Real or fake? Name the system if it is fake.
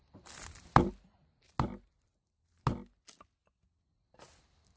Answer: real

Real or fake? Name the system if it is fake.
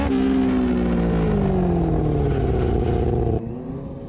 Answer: real